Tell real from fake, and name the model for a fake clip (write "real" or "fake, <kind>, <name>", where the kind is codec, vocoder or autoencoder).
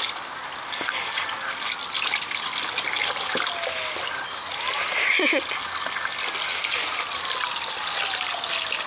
real